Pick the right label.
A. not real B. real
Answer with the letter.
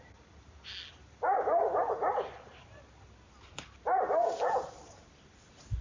B